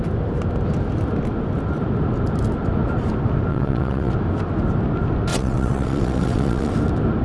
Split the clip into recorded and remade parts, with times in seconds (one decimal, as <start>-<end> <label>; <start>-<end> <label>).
0.0-3.5 recorded; 3.5-4.1 remade; 4.1-5.3 recorded; 5.3-6.7 remade; 6.7-7.2 recorded